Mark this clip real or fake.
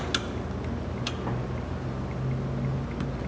real